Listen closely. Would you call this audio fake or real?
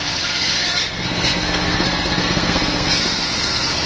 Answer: fake